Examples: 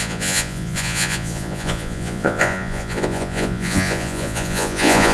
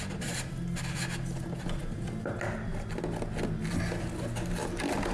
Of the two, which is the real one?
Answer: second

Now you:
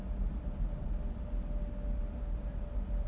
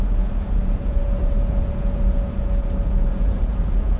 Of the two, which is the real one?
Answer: first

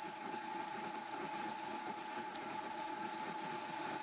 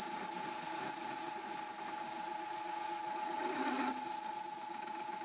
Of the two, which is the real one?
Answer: second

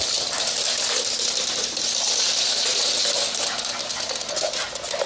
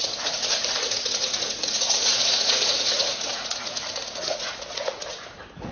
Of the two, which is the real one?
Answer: first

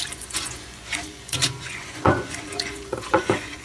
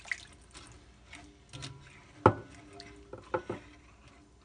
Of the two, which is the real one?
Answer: second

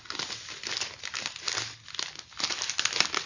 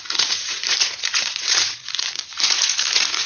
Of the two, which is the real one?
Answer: first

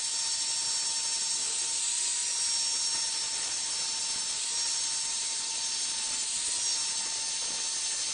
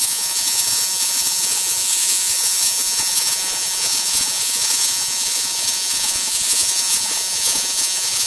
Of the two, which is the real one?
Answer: first